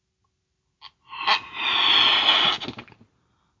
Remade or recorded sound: recorded